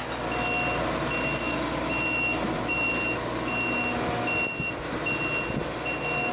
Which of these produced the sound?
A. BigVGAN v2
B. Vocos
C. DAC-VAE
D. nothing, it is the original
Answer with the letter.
D